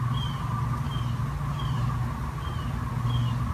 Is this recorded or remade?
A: recorded